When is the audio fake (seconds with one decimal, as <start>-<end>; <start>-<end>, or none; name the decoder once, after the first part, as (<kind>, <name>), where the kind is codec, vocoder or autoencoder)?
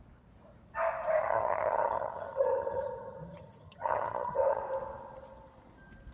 1.2-4.6 (vocoder, HiFi-GAN)